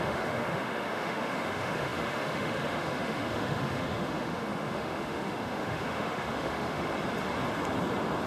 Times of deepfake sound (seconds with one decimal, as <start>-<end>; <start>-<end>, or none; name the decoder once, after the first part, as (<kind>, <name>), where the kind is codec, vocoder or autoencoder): 0.0-6.9 (autoencoder, DAC-VAE)

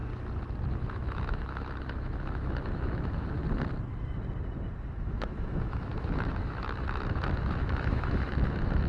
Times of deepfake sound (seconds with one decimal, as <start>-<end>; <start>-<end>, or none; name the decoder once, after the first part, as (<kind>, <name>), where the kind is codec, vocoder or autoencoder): 0.7-3.4 (autoencoder, DAC-VAE); 5.0-8.9

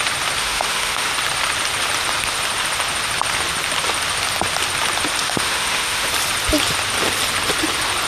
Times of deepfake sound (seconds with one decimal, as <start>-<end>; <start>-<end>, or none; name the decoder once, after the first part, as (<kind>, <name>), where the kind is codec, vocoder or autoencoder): 0.4-1.1 (autoencoder, DAC-VAE); 5.2-6.1

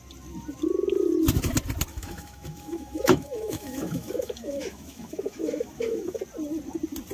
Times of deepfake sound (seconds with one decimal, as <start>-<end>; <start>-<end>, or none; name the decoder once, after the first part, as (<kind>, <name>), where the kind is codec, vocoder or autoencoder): 1.9-6.2 (autoencoder, DAC-VAE)